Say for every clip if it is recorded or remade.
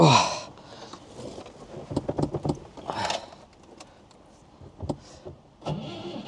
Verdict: recorded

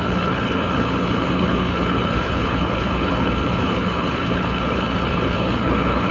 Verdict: remade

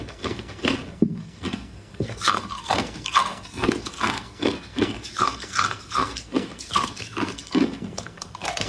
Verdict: remade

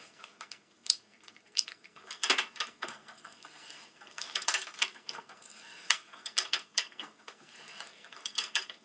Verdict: remade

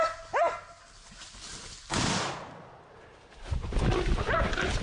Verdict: recorded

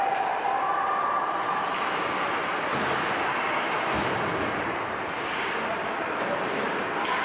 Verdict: recorded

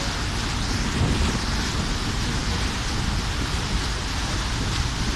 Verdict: recorded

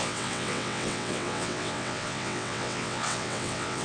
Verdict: remade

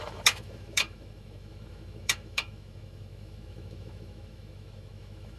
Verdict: remade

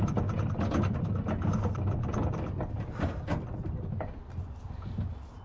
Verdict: recorded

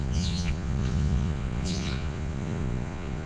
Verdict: remade